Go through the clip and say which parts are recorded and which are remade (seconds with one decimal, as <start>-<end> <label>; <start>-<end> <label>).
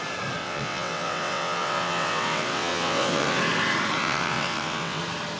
0.0-0.4 recorded; 0.4-3.4 remade; 3.4-4.0 recorded; 4.0-5.0 remade; 5.0-5.4 recorded